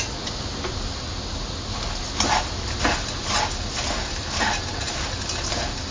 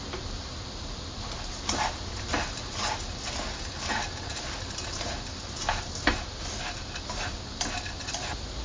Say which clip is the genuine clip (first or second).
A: first